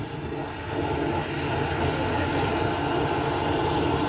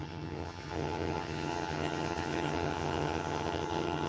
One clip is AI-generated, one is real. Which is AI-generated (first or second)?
second